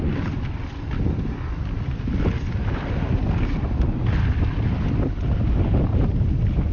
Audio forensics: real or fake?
real